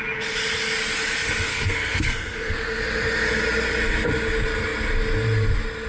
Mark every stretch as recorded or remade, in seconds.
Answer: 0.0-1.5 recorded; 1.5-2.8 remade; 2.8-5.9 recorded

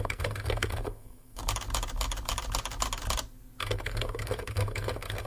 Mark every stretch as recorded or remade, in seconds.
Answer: 0.0-1.4 remade; 1.4-3.6 recorded; 3.6-5.3 remade

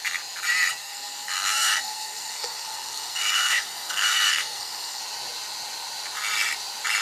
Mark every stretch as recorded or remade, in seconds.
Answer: 0.0-0.8 recorded; 0.8-5.0 remade; 5.0-7.0 recorded

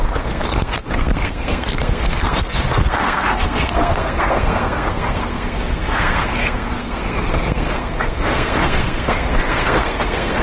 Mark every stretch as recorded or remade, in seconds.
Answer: 0.0-10.4 remade